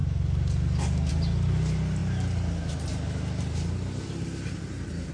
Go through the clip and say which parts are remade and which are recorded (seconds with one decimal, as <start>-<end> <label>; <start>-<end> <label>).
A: 0.0-5.1 recorded